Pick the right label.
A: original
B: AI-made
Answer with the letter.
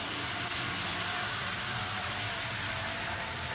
A